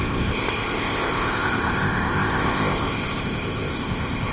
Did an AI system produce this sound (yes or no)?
yes